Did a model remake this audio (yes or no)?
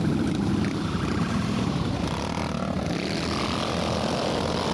no